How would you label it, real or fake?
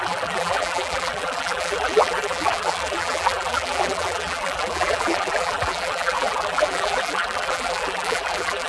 fake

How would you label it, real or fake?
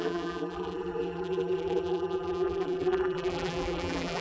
fake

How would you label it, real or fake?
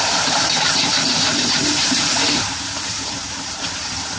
fake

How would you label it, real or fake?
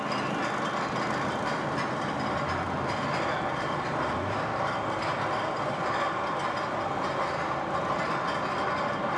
real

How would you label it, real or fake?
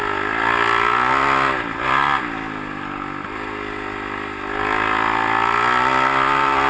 real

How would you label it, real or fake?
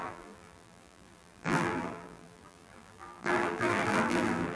fake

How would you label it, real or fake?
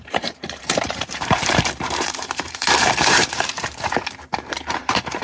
fake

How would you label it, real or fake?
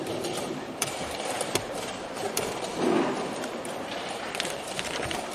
fake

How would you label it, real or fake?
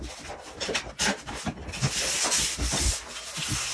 real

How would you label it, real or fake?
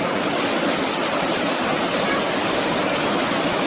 real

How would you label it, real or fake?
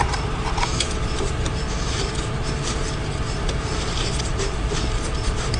fake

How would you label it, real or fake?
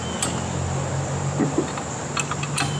real